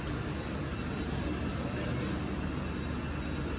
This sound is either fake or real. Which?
real